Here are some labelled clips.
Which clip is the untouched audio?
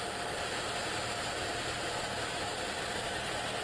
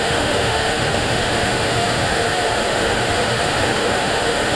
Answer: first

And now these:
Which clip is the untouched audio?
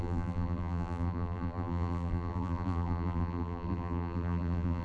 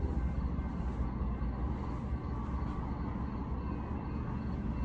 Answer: second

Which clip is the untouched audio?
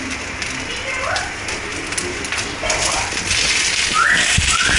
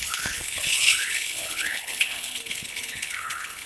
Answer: first